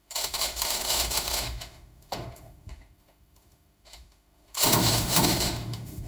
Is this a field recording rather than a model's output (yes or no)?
no